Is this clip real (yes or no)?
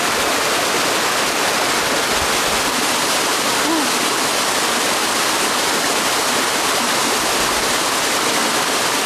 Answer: yes